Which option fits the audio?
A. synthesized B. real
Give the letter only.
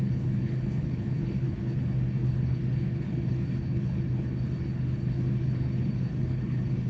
A